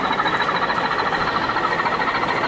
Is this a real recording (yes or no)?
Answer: yes